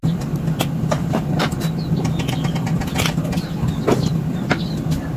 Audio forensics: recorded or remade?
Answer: recorded